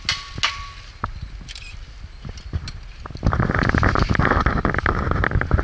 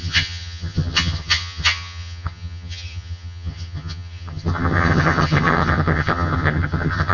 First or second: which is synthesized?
second